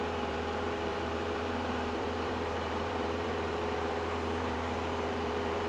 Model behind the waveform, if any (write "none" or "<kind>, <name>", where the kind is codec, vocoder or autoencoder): vocoder, BigVGAN v2